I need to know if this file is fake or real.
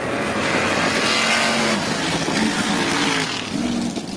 real